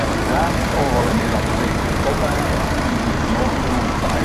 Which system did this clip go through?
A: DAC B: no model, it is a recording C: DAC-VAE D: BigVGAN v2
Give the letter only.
D